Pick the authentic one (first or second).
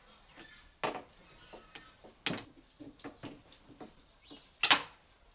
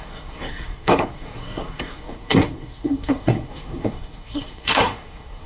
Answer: first